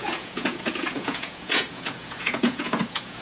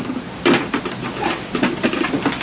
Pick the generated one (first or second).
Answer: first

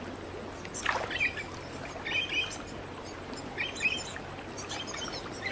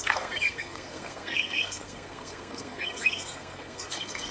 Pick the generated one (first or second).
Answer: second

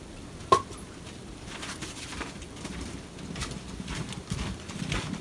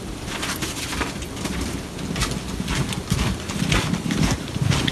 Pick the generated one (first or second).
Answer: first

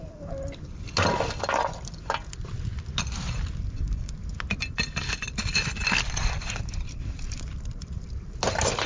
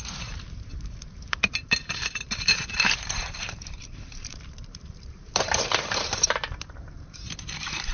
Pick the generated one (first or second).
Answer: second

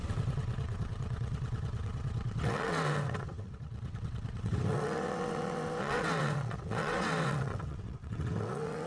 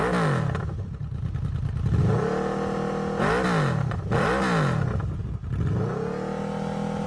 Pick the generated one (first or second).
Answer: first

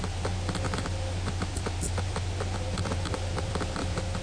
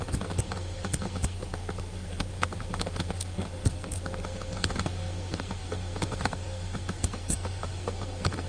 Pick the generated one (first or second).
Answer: second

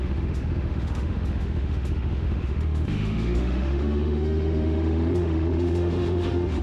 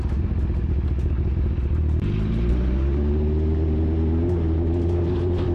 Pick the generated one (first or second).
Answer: first